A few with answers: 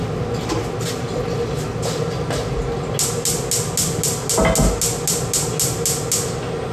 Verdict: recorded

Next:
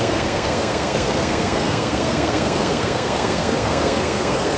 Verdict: remade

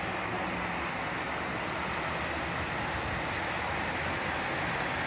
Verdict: recorded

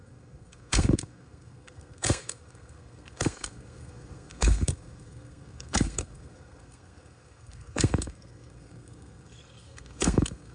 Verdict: remade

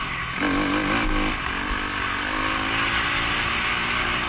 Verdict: recorded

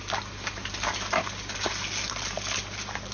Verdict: recorded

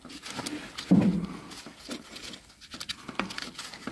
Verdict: recorded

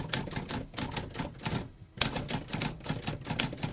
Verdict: recorded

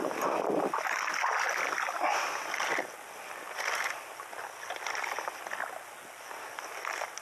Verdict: recorded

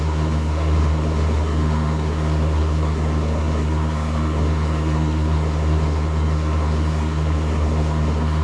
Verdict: remade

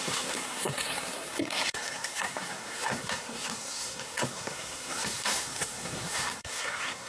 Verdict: remade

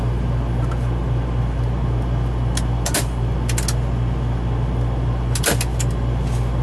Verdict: recorded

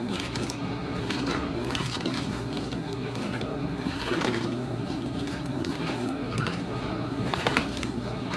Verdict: remade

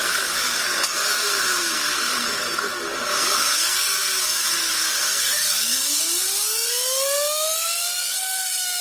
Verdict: remade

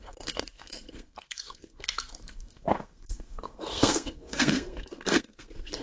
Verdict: remade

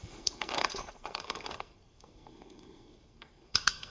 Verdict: remade